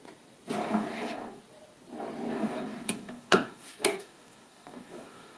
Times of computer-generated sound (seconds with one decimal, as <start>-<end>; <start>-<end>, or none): 0.6-1.4; 2.3-5.4